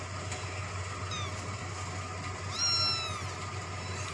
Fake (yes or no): no